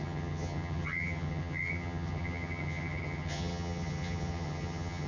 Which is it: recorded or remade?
remade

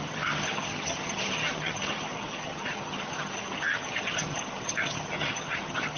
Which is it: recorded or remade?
remade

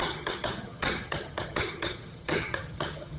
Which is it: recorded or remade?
remade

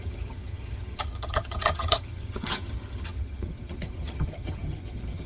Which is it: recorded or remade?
remade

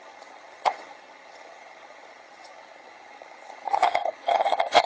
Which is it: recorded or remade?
remade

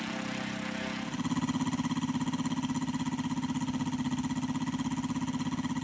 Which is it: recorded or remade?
recorded